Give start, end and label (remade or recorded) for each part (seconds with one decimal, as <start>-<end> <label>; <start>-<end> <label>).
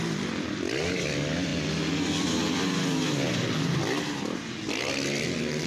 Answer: 0.0-5.7 recorded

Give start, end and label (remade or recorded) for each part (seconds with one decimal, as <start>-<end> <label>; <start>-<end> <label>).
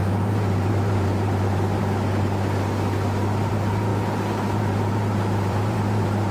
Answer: 0.0-1.8 remade; 1.8-3.5 recorded; 3.5-3.9 remade; 3.9-4.6 recorded; 4.6-6.3 remade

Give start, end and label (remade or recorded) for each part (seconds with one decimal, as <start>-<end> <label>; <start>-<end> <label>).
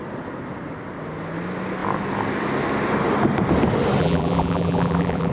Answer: 0.0-4.0 recorded; 4.0-5.3 remade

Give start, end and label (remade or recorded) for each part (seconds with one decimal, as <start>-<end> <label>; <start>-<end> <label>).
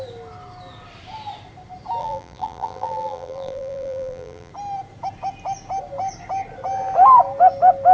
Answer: 0.0-2.0 recorded; 2.0-4.5 remade; 4.5-7.9 recorded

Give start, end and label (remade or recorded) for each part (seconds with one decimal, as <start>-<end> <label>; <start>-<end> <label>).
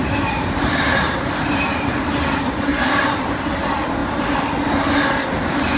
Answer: 0.0-3.5 remade; 3.5-5.8 recorded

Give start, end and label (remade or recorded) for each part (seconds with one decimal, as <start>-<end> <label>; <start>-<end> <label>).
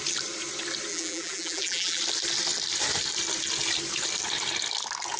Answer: 0.0-0.9 recorded; 0.9-2.0 remade; 2.0-5.2 recorded